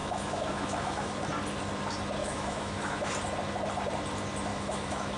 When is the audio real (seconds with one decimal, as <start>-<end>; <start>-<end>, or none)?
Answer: 1.1-2.2; 3.1-4.5